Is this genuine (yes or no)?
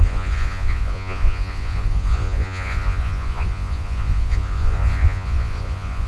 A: no